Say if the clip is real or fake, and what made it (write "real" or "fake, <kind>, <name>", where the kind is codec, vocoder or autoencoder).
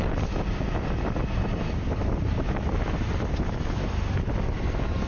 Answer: real